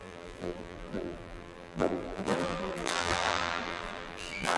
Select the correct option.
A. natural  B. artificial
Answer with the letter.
B